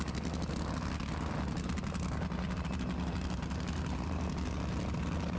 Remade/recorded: recorded